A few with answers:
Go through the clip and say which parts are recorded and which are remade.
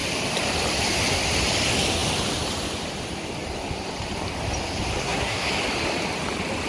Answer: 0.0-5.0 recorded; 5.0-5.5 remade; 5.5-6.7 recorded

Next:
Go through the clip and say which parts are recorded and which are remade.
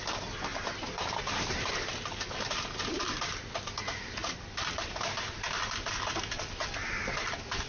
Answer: 0.0-0.5 recorded; 0.5-1.9 remade; 1.9-2.9 recorded; 2.9-3.4 remade; 3.4-4.2 recorded; 4.2-6.4 remade; 6.4-7.7 recorded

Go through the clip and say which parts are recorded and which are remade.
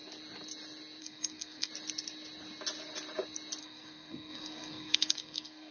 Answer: 0.0-1.0 recorded; 1.0-1.7 remade; 1.7-3.6 recorded; 3.6-5.7 remade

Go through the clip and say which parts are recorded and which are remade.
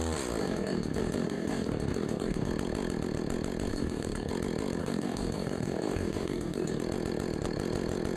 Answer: 0.0-0.4 recorded; 0.4-2.5 remade; 2.5-3.7 recorded; 3.7-4.3 remade; 4.3-4.8 recorded; 4.8-6.8 remade; 6.8-8.2 recorded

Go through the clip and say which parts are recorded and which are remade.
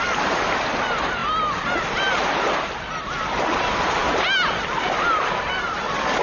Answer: 0.0-6.2 recorded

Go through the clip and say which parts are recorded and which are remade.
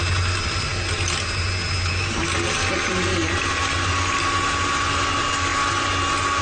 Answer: 0.0-6.4 recorded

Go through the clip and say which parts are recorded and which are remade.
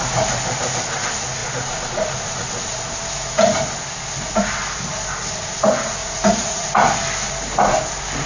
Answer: 0.0-6.0 recorded; 6.0-6.7 remade; 6.7-8.3 recorded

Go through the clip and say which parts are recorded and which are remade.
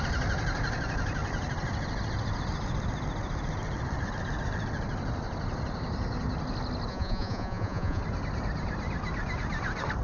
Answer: 0.0-6.9 recorded; 6.9-8.0 remade; 8.0-10.0 recorded